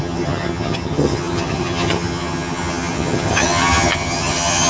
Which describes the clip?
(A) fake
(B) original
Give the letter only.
A